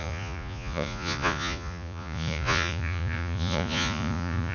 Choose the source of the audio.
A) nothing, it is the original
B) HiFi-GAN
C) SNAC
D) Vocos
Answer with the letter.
D